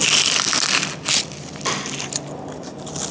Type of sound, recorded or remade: recorded